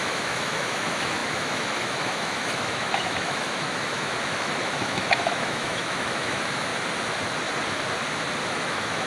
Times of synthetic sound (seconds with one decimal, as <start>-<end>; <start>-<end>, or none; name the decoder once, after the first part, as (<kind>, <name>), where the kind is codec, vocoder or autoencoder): 0.0-6.7 (autoencoder, DAC-VAE); 8.5-9.1